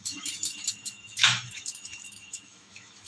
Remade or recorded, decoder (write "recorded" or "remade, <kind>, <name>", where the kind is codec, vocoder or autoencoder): remade, autoencoder, DAC-VAE